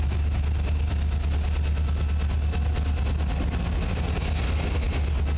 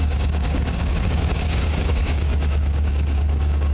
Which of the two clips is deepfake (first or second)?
second